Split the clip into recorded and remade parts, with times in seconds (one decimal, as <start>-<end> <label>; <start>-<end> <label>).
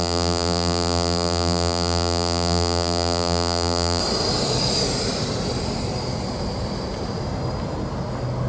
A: 0.0-4.0 remade; 4.0-8.5 recorded